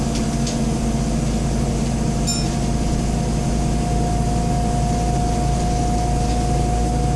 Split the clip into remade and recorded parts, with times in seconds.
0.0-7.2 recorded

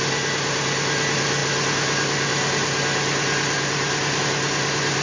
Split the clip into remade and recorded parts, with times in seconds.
0.0-5.0 recorded

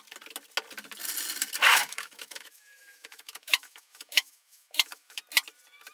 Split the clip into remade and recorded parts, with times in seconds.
0.0-1.7 recorded; 1.7-5.2 remade; 5.2-5.9 recorded